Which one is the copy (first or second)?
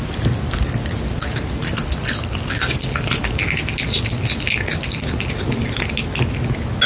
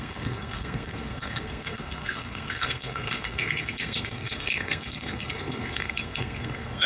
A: second